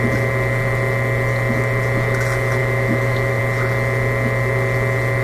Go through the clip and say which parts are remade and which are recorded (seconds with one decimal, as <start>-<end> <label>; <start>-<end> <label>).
0.0-2.6 recorded; 2.6-3.4 remade; 3.4-5.2 recorded